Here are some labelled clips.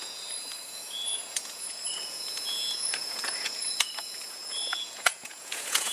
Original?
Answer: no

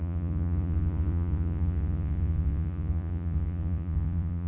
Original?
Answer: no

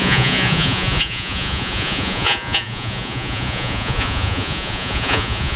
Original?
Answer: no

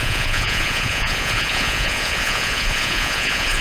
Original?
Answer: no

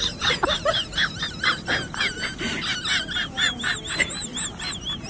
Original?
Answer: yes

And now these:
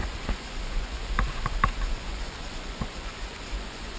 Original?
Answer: no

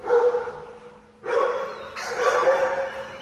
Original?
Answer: yes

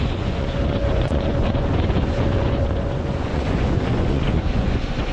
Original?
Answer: no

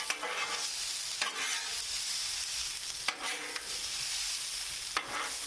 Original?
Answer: yes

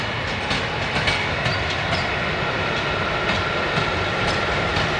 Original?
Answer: yes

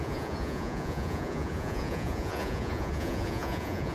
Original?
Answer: no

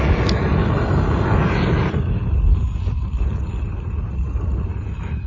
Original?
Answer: yes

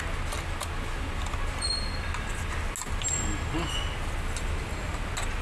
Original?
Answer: yes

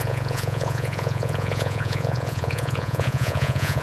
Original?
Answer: no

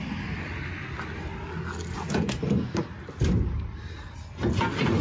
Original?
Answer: yes